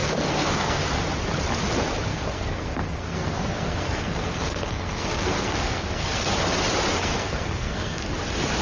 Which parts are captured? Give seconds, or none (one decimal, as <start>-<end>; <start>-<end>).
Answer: 0.8-2.1; 6.4-6.9; 8.1-8.6